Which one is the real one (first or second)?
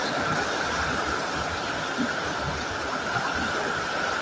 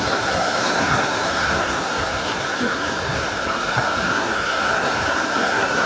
first